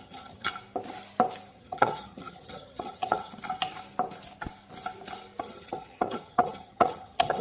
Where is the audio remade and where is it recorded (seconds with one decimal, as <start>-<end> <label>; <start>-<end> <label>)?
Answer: 0.0-0.5 remade; 0.5-1.5 recorded; 1.5-3.3 remade; 3.3-5.4 recorded; 5.4-7.4 remade